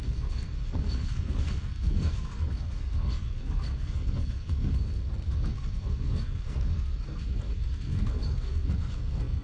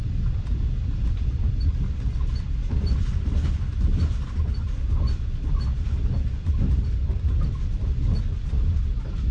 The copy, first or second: first